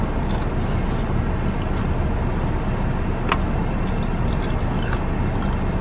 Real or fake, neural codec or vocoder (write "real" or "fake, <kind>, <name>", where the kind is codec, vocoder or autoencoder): real